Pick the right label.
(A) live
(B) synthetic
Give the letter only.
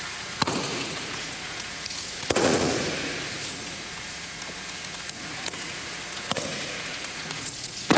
B